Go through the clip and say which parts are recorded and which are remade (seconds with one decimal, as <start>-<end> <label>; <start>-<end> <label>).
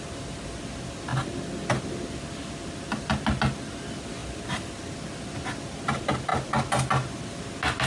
0.0-7.9 recorded